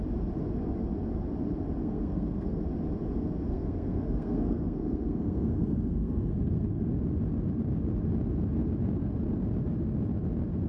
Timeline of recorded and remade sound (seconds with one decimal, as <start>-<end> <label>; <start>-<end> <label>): 0.0-1.8 recorded; 1.8-2.6 remade; 2.6-3.5 recorded; 3.5-6.9 remade; 6.9-10.7 recorded

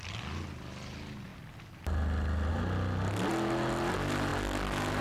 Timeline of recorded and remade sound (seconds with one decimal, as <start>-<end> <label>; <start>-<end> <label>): 0.0-5.0 recorded